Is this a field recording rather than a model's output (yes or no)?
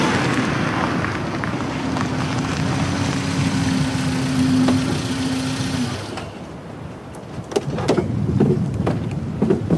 yes